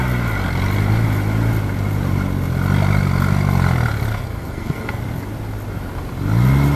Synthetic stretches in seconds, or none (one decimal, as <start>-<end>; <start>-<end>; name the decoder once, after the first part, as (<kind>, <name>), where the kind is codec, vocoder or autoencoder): 4.1-5.0 (codec, SNAC)